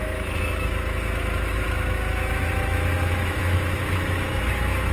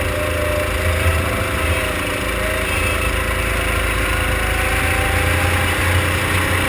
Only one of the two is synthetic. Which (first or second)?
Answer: first